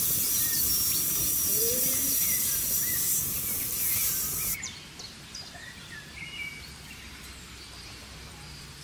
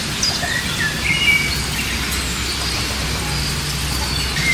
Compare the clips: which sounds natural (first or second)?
second